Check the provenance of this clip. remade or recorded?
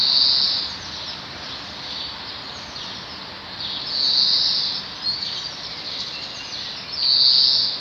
recorded